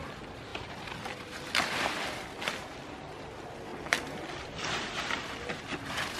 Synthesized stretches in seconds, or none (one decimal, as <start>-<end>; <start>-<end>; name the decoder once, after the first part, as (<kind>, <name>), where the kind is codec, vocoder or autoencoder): none